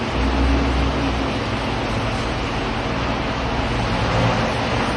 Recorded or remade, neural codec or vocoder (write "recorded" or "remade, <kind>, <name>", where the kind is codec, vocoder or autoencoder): recorded